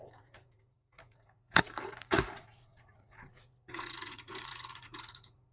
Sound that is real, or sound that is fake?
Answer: fake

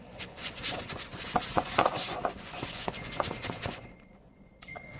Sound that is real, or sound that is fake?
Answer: fake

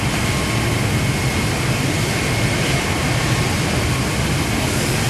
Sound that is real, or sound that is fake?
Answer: real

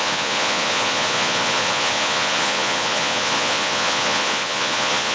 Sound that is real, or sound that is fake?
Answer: fake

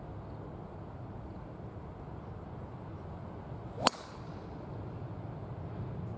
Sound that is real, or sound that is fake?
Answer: real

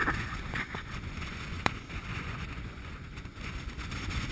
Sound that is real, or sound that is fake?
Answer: fake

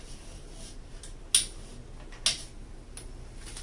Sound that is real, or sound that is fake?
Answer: real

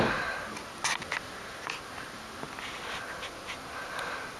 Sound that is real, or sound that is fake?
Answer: real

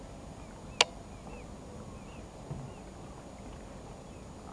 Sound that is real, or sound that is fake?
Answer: real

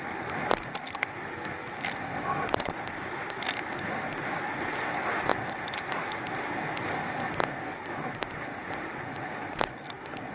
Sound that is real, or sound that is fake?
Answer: real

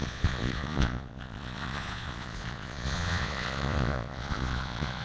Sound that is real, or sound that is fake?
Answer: fake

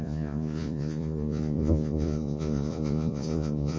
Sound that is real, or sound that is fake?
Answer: fake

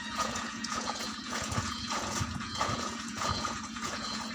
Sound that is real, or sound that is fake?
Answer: fake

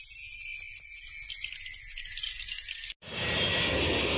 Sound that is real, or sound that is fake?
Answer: real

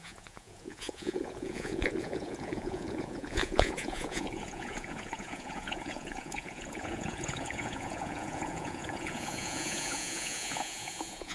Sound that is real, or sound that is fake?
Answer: fake